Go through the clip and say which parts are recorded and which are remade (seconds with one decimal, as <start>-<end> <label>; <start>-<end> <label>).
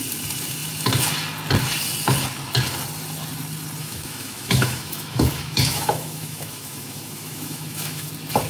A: 0.0-3.8 recorded; 3.8-8.1 remade; 8.1-8.5 recorded